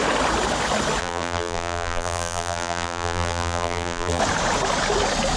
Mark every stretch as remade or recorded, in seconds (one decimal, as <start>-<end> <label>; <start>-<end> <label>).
0.0-1.0 recorded; 1.0-4.2 remade; 4.2-5.4 recorded